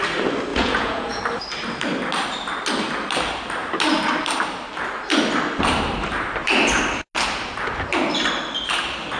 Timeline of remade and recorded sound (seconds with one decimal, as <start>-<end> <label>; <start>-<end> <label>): 0.0-0.5 recorded; 0.5-1.2 remade; 1.2-9.2 recorded